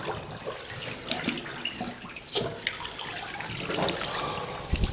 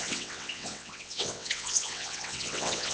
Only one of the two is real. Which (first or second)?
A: first